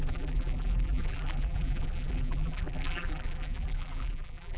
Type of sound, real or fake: fake